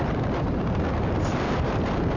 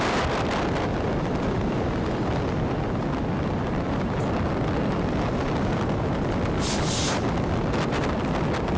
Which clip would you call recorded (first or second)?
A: second